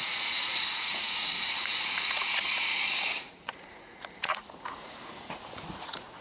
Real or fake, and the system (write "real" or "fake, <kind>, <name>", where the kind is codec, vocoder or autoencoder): fake, vocoder, Vocos